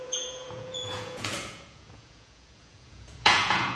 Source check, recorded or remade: remade